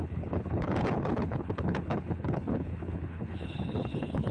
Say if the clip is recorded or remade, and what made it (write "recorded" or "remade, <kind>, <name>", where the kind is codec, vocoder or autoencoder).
remade, codec, HILCodec